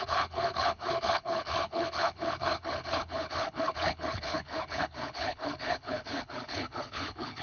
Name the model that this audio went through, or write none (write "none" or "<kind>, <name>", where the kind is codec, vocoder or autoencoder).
codec, HILCodec